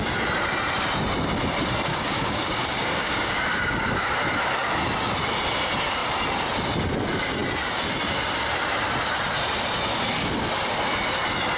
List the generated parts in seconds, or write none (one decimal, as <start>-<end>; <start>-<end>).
1.9-4.1